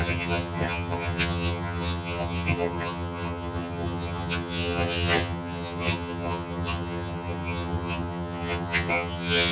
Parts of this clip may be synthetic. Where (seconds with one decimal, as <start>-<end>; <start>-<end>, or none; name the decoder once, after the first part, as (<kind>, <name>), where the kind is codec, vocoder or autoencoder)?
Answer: 0.0-9.5 (vocoder, HiFi-GAN)